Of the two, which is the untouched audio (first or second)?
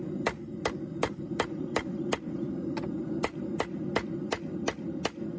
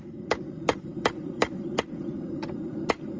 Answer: first